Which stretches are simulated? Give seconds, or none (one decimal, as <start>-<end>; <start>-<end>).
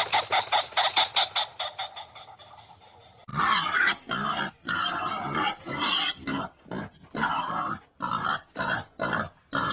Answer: none